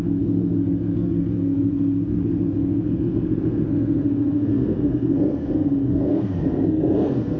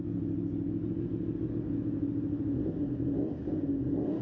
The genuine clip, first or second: second